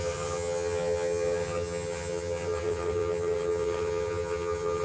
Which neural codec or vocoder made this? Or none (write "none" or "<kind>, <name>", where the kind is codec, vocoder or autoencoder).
vocoder, HiFi-GAN